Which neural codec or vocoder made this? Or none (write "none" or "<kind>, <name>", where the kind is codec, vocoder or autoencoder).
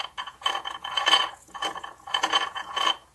vocoder, Vocos